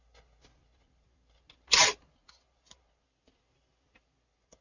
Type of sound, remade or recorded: recorded